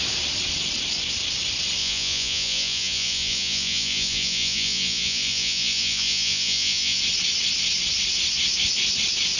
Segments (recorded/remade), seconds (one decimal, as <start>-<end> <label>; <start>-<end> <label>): 0.0-1.8 recorded; 1.8-7.0 remade; 7.0-9.4 recorded